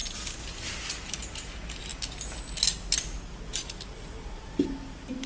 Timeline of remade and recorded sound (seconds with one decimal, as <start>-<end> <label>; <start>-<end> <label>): 0.0-5.3 recorded